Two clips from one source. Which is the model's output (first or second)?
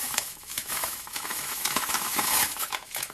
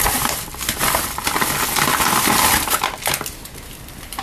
first